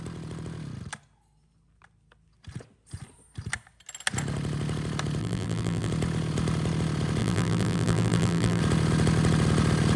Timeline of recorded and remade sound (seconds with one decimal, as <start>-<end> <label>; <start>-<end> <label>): 0.0-5.2 recorded; 5.2-5.9 remade; 5.9-7.2 recorded; 7.2-8.6 remade; 8.6-10.0 recorded